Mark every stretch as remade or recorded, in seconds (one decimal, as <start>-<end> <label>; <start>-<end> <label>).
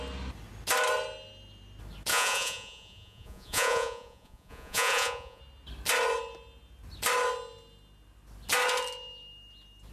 0.0-2.1 recorded; 2.1-5.4 remade; 5.4-9.9 recorded